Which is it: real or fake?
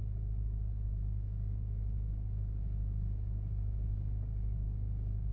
fake